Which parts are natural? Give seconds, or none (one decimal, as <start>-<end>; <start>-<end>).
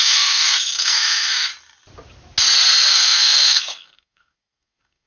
1.5-2.9